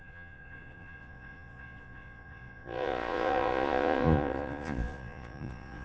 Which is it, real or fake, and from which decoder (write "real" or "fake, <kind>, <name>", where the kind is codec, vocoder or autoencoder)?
fake, vocoder, Vocos